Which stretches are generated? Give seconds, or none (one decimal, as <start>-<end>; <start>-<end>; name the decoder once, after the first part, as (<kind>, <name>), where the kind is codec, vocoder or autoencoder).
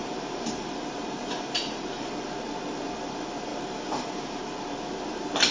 0.0-2.1 (vocoder, BigVGAN v2); 3.5-4.4